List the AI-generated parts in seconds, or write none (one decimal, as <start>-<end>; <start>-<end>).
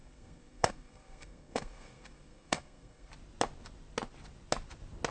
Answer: 0.0-3.1